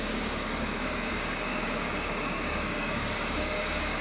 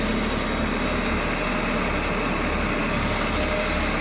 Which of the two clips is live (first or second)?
second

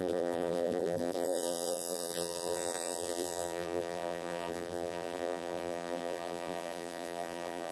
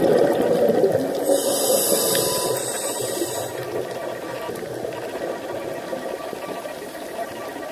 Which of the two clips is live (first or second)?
second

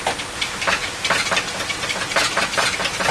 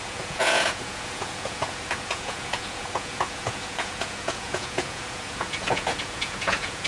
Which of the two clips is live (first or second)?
first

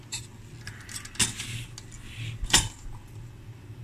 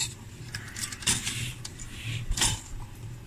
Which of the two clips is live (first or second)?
first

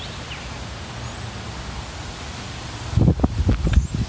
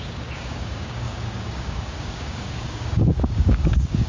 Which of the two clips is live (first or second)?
first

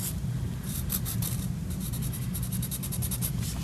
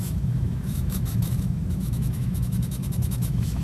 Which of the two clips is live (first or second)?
first